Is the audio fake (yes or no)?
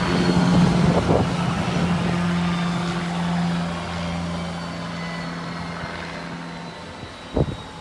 no